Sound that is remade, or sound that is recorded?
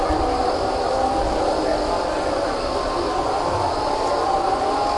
recorded